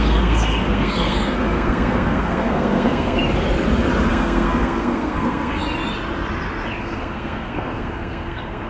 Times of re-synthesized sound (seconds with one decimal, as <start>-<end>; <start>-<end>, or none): 0.0-3.2; 4.1-5.6; 6.8-8.7